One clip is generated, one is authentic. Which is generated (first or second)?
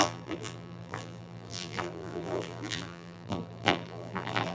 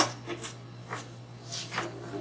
first